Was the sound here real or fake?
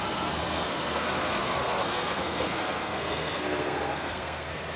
fake